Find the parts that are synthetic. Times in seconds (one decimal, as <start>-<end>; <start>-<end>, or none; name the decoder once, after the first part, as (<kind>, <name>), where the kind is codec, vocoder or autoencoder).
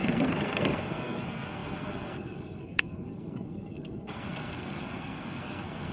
0.0-5.9 (codec, SNAC)